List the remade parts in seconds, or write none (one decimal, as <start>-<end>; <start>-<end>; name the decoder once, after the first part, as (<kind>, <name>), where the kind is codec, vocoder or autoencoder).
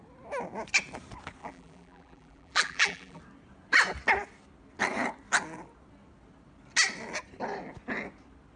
1.4-3.2 (vocoder, BigVGAN v2)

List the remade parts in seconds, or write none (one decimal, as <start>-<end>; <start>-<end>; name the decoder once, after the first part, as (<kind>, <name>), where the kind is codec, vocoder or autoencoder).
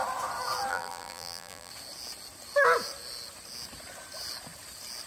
0.7-1.7 (vocoder, BigVGAN v2)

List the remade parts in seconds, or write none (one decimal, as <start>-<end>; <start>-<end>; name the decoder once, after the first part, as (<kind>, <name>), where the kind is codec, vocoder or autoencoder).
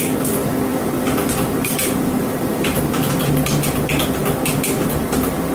0.7-2.8 (vocoder, BigVGAN v2)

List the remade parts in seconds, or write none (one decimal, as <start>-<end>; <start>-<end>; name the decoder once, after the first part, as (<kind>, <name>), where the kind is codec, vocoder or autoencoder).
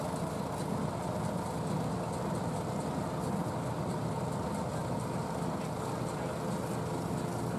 none